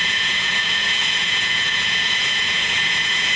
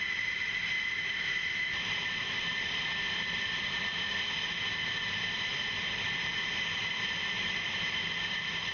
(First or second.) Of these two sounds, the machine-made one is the first